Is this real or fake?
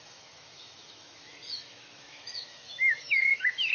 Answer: fake